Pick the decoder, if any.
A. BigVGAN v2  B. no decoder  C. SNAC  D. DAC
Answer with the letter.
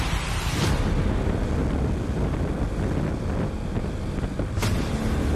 B